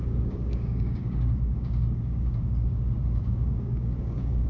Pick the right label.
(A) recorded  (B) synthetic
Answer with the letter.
B